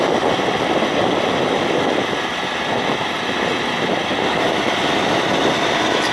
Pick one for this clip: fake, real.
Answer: real